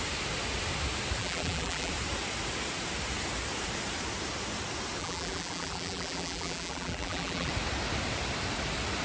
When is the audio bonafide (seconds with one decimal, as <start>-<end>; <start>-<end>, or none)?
0.0-1.2; 1.9-5.0; 7.5-9.0